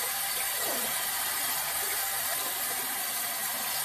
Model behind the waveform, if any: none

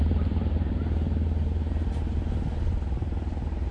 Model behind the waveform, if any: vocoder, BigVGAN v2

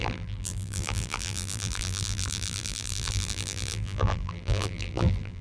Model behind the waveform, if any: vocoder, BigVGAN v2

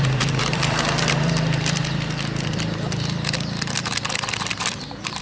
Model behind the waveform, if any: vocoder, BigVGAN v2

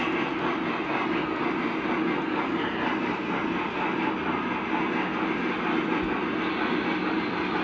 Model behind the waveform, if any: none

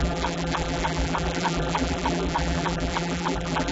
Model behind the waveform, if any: vocoder, BigVGAN v2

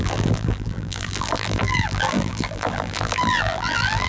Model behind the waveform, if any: vocoder, BigVGAN v2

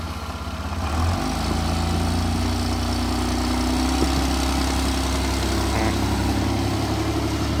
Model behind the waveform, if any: none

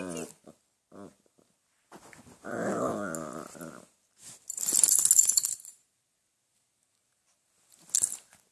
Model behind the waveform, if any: none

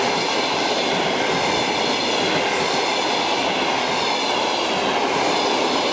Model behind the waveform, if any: none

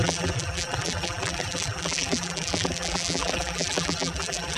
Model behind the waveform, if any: vocoder, BigVGAN v2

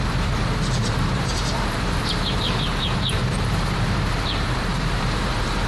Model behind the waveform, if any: vocoder, BigVGAN v2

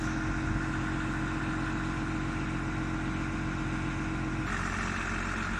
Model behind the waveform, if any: none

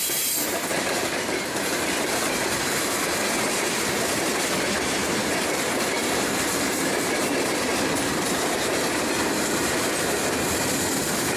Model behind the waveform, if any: vocoder, BigVGAN v2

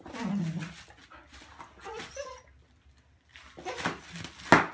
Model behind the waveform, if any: none